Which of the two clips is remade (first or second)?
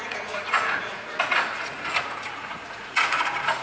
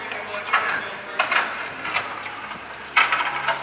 first